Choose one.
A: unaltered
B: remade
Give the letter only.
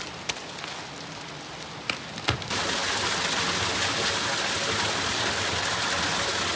A